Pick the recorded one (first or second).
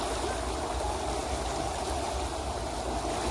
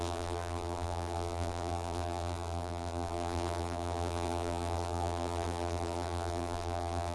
first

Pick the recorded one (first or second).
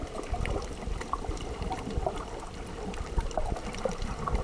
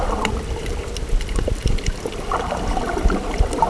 second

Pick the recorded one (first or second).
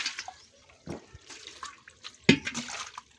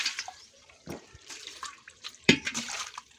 first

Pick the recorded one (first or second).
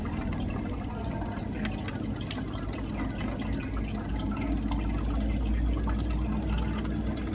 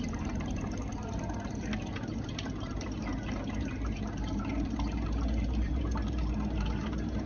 first